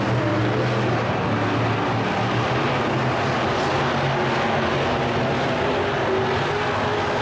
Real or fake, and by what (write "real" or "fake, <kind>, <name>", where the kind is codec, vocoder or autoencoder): real